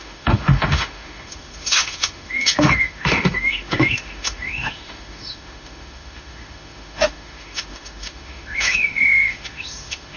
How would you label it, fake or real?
fake